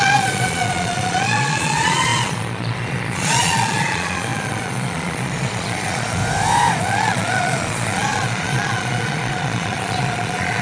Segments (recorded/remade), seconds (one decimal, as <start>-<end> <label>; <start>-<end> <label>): 0.0-6.2 remade; 6.2-6.8 recorded; 6.8-10.6 remade